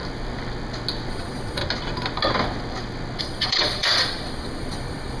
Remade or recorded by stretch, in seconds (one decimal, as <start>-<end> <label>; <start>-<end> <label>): 0.0-1.1 recorded; 1.1-1.6 remade; 1.6-3.2 recorded; 3.2-5.2 remade